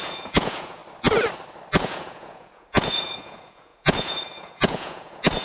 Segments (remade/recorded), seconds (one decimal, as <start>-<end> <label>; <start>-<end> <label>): 0.0-0.8 remade; 0.8-1.8 recorded; 1.8-5.4 remade